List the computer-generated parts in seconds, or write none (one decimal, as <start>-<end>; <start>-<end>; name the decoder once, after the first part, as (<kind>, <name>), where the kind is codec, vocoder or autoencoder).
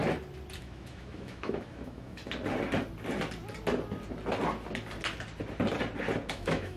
0.6-2.2 (autoencoder, DAC-VAE); 6.3-6.8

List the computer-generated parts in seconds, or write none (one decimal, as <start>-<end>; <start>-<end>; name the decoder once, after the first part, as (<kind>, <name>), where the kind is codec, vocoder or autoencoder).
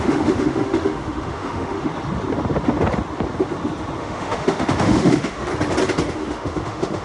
0.0-1.9 (autoencoder, DAC-VAE); 4.0-5.5; 6.1-7.0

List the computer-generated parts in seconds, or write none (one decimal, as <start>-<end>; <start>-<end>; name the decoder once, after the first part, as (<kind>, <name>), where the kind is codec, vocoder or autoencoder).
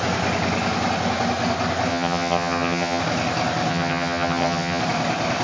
1.9-3.0 (vocoder, HiFi-GAN); 3.7-4.8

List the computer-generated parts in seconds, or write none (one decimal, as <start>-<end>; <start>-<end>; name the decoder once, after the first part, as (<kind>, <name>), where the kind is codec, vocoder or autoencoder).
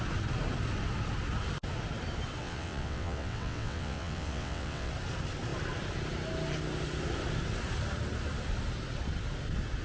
2.4-4.9 (vocoder, WaveNeXt)